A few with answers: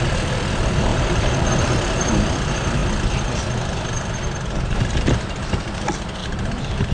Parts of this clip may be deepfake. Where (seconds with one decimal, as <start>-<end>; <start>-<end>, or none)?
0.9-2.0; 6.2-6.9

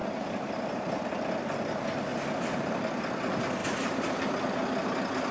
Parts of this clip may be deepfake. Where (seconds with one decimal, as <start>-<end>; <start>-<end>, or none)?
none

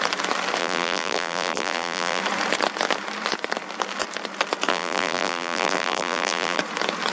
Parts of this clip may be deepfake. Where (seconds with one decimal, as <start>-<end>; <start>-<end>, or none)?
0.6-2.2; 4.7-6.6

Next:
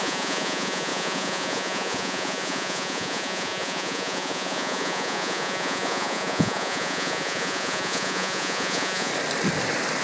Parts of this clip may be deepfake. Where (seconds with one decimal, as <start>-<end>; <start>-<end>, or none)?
0.0-9.1